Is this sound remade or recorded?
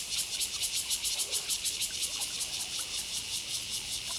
recorded